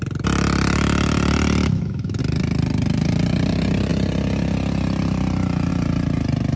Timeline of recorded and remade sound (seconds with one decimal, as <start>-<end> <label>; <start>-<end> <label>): 0.0-1.6 recorded; 1.6-2.2 remade; 2.2-6.6 recorded